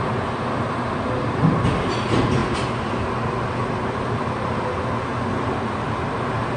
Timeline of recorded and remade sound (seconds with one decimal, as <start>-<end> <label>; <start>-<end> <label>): 0.0-6.6 recorded